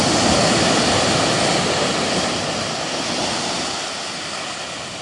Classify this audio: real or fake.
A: real